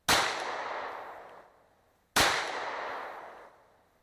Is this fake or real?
real